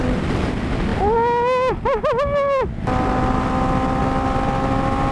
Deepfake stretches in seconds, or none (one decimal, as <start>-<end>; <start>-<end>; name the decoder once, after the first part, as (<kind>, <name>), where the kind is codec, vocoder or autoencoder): none